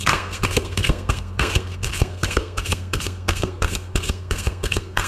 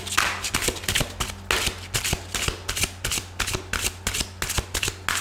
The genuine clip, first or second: second